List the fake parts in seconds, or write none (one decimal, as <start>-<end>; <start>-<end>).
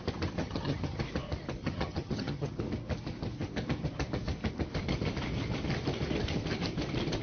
0.4-1.0; 1.6-2.6